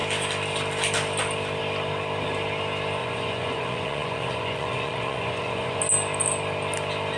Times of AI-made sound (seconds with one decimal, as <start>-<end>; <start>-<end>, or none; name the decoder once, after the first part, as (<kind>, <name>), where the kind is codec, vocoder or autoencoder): 3.0-5.8 (vocoder, Vocos)